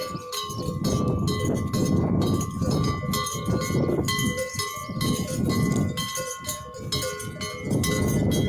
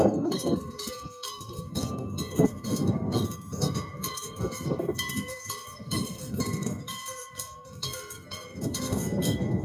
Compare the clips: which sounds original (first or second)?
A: first